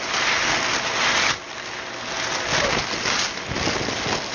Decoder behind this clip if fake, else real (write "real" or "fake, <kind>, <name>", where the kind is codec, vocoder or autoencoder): real